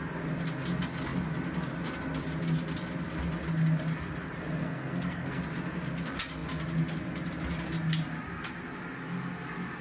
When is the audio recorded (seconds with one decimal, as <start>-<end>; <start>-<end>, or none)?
0.0-4.6; 5.4-9.8